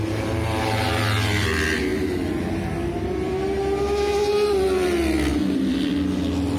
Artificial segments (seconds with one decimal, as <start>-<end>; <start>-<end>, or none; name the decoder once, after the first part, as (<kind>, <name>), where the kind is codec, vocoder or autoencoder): none